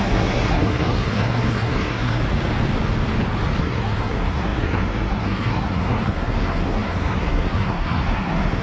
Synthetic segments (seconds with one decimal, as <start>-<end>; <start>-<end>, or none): 0.0-2.2; 3.6-8.6